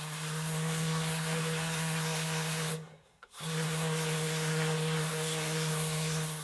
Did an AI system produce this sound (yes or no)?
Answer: yes